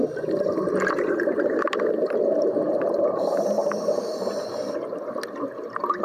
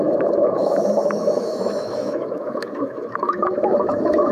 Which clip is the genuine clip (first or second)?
first